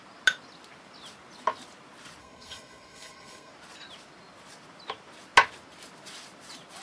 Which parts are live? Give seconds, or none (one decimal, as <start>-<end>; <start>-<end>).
0.0-2.2; 3.5-6.8